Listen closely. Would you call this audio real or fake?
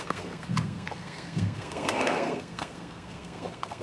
fake